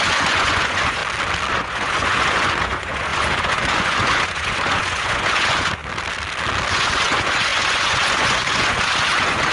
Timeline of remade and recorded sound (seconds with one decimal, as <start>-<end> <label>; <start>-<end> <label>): 0.0-1.0 remade; 1.0-1.5 recorded; 1.5-5.8 remade; 5.8-6.7 recorded; 6.7-9.5 remade